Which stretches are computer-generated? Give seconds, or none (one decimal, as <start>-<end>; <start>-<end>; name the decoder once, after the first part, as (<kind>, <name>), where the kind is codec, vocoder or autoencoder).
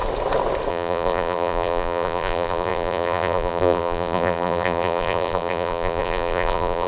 0.7-6.9 (vocoder, BigVGAN v2)